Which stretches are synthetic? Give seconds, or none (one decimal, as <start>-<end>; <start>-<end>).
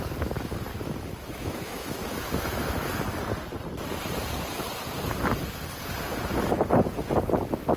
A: 0.7-3.0